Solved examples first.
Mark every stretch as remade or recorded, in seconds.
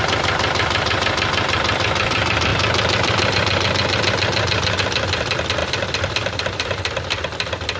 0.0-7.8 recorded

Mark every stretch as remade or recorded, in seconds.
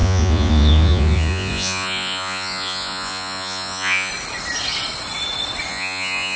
0.0-4.1 remade; 4.1-5.7 recorded; 5.7-6.4 remade